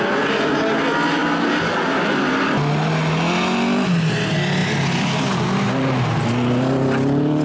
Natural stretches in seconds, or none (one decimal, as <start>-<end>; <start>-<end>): 0.0-7.4